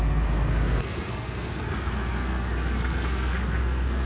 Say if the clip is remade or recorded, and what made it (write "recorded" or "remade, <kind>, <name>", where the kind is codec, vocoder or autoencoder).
remade, codec, SNAC